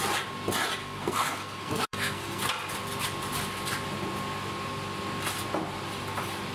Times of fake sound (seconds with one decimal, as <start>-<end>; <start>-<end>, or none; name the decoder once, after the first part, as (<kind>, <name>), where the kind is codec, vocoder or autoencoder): 0.8-2.5 (codec, SNAC)